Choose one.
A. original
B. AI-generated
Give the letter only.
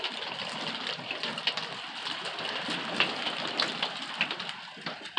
A